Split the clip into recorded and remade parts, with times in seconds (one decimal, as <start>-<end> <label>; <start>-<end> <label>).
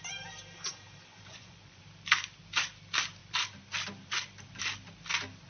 0.0-1.1 recorded; 1.1-1.8 remade; 1.8-5.5 recorded